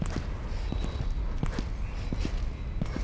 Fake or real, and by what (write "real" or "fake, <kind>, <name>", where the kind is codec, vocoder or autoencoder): real